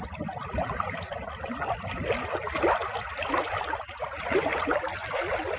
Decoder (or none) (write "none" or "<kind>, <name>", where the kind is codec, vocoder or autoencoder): none